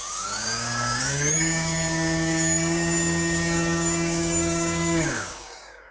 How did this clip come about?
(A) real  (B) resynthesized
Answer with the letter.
B